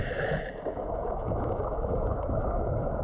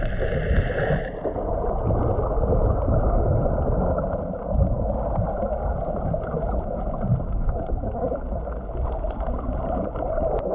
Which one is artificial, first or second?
first